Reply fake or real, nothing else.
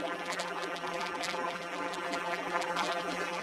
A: fake